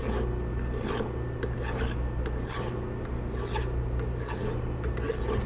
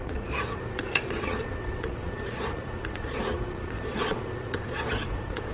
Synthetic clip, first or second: second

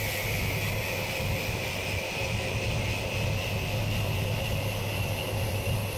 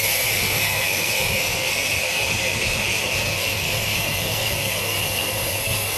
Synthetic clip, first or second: second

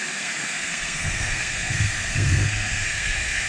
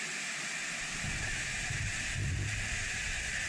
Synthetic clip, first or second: first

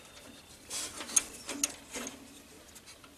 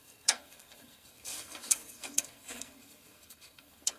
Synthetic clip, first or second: second